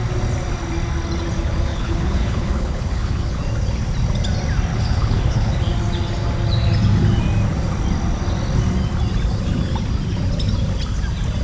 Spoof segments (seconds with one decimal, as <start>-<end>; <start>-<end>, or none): 1.7-3.4; 4.7-5.6